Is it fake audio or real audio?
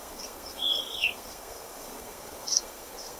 fake